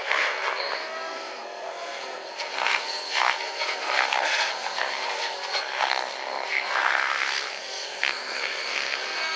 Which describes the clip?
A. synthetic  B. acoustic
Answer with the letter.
A